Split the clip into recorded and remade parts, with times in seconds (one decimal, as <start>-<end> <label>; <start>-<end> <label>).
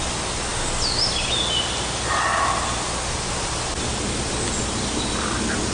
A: 0.0-5.7 recorded